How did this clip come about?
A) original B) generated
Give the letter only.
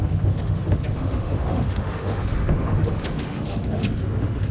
B